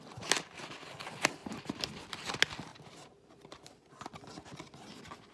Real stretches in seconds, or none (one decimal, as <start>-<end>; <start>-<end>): 0.0-5.3